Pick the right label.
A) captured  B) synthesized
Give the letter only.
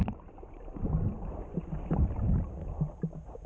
A